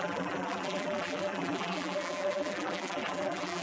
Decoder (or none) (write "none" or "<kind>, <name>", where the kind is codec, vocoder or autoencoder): vocoder, BigVGAN v2